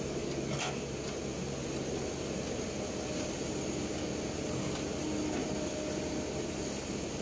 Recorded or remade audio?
recorded